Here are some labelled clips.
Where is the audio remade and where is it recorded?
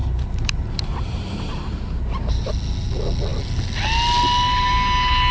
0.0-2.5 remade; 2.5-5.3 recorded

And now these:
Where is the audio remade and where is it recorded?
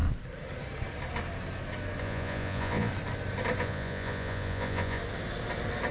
0.0-2.0 recorded; 2.0-2.9 remade; 2.9-3.6 recorded; 3.6-5.0 remade; 5.0-5.9 recorded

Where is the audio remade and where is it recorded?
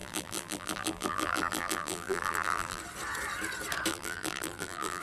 0.0-2.8 remade; 2.8-3.9 recorded; 3.9-5.0 remade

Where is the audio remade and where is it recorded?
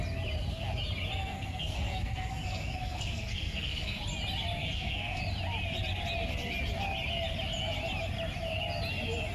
0.0-1.2 recorded; 1.2-4.0 remade; 4.0-4.6 recorded; 4.6-5.2 remade; 5.2-9.3 recorded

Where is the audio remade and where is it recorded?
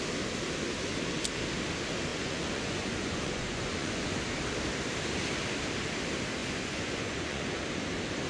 0.0-2.1 recorded; 2.1-4.2 remade; 4.2-6.4 recorded; 6.4-7.6 remade; 7.6-8.3 recorded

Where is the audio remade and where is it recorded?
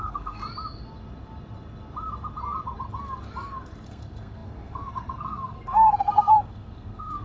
0.0-0.4 remade; 0.4-3.9 recorded; 3.9-7.2 remade